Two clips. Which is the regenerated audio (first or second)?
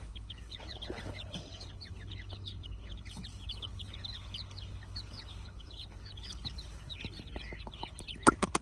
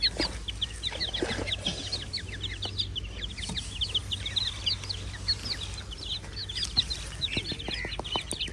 first